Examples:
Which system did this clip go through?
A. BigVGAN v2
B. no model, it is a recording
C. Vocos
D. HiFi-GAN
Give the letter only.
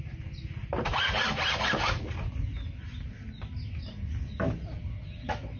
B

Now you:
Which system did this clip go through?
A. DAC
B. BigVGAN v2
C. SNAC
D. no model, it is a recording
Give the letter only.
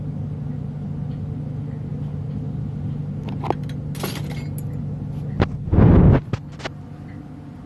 D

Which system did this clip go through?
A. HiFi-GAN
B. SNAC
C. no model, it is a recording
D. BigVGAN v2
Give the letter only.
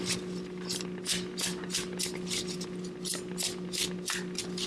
C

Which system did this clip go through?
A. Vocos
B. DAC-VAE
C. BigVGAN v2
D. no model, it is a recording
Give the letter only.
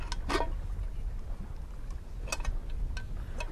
D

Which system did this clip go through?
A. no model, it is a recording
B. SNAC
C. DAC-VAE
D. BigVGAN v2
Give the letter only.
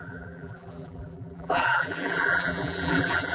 D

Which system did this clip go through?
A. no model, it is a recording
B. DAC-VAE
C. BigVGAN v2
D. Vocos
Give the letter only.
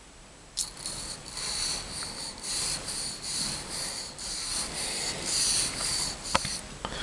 C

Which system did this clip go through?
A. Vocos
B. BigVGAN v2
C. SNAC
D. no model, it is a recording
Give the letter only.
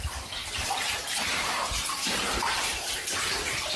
B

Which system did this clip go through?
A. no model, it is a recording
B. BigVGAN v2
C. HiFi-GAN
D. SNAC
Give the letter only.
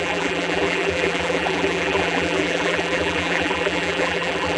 B